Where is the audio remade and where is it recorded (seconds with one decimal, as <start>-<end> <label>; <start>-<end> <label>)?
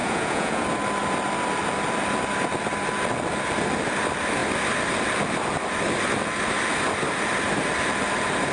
0.0-0.6 remade; 0.6-8.5 recorded